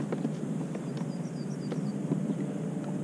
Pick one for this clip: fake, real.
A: real